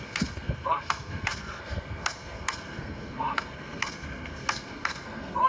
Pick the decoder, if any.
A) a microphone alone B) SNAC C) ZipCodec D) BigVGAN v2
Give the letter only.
B